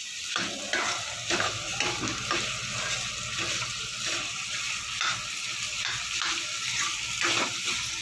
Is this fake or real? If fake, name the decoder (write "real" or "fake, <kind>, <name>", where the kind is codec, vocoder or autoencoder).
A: real